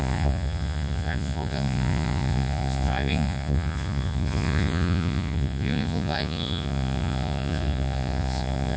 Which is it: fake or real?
fake